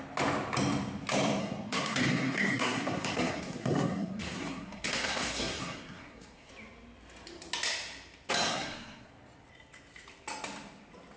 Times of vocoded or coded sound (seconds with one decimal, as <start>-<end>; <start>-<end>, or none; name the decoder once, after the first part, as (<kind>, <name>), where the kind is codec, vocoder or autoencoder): 1.4-6.5 (codec, SNAC); 8.5-9.1